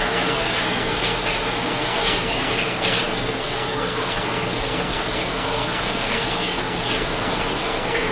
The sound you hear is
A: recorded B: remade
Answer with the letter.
B